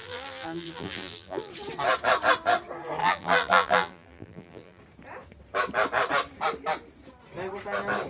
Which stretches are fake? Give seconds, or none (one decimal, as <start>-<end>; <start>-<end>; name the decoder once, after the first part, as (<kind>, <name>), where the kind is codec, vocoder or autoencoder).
0.0-1.5 (vocoder, BigVGAN v2); 3.0-4.8